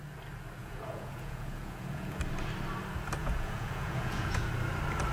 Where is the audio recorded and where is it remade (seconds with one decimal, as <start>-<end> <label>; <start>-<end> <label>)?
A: 0.0-0.6 recorded; 0.6-2.2 remade; 2.2-3.2 recorded; 3.2-4.5 remade; 4.5-5.1 recorded